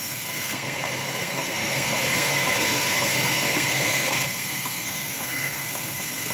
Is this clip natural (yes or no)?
no